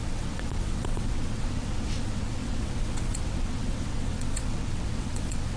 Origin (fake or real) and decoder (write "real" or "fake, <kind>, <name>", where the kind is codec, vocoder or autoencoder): fake, vocoder, WaveNeXt